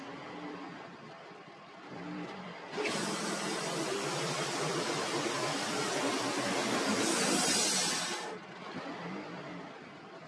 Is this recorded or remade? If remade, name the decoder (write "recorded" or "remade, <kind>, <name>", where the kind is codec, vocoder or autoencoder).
recorded